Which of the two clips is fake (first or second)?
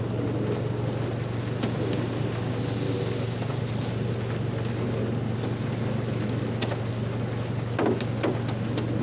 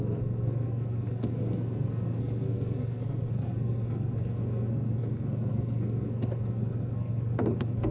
second